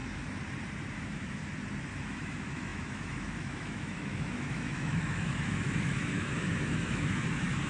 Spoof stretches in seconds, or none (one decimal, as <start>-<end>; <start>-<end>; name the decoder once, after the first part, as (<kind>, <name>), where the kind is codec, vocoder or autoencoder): 0.9-1.4 (autoencoder, DAC-VAE); 2.0-7.7